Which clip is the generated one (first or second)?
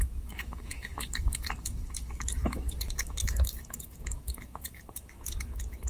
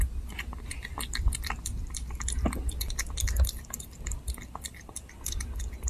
first